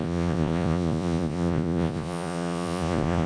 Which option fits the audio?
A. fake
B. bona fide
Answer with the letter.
A